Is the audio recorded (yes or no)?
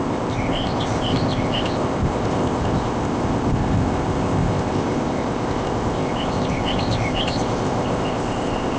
no